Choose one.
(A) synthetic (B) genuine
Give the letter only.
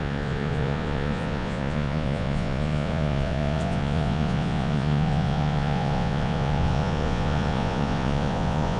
A